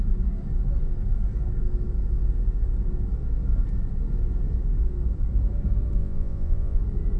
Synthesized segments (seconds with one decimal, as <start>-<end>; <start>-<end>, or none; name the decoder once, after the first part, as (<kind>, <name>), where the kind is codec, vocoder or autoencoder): 6.0-6.8 (vocoder, Vocos)